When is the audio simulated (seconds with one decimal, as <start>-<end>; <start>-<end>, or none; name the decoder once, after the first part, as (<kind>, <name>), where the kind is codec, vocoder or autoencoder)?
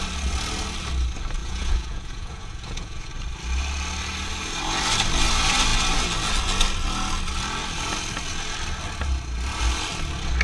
1.4-3.1 (vocoder, Vocos)